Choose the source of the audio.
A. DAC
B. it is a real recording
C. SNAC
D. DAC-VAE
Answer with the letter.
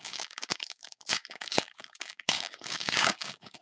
A